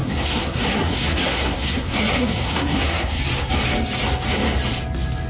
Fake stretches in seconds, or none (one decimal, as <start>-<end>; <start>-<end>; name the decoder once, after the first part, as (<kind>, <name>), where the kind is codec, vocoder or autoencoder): 0.0-3.2 (codec, SNAC)